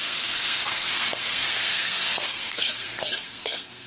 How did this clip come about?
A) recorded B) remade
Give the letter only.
B